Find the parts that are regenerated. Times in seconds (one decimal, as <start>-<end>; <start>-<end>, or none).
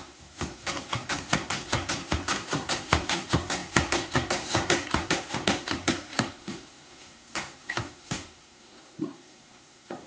0.0-10.1